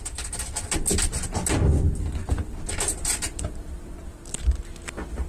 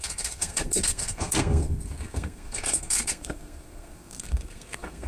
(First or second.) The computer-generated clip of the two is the second